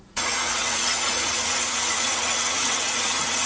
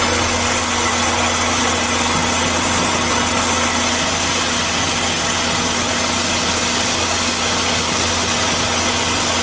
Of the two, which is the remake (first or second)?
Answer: first